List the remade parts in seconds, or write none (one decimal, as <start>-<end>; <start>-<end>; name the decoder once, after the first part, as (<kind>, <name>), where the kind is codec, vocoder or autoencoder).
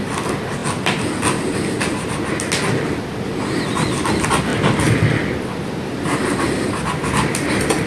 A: none